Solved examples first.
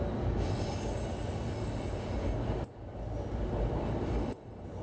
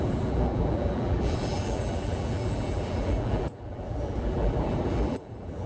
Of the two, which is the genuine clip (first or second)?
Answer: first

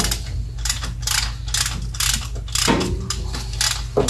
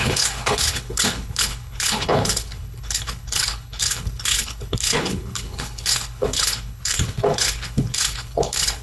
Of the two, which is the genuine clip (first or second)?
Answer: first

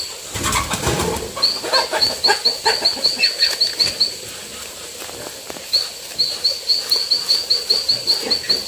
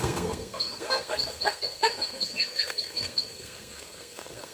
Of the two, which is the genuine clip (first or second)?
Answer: first